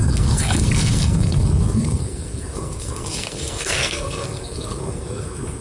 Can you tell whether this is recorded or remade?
remade